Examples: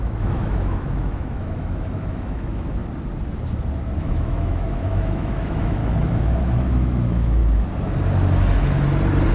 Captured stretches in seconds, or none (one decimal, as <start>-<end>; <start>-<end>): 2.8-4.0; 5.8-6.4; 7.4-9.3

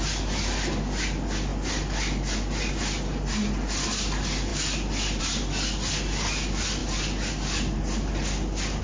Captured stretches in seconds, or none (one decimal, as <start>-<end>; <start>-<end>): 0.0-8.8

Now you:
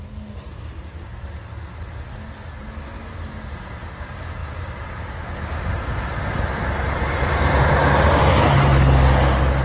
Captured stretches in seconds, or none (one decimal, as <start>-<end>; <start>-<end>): 0.0-9.6